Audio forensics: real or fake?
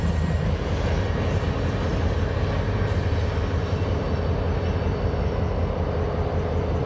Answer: real